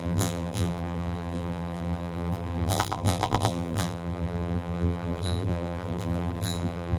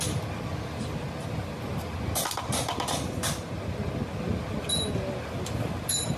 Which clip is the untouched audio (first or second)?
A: second